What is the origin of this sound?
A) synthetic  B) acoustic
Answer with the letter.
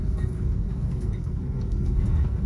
A